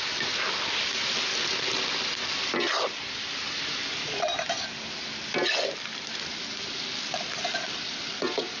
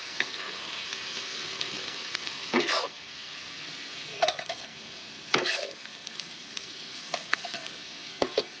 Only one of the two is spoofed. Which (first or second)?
second